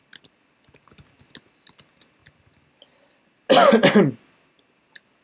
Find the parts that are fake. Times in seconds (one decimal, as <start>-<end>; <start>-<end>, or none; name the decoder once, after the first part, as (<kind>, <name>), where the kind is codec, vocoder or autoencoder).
none